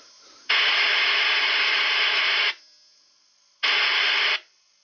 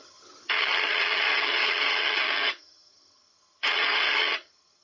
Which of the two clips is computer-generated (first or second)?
second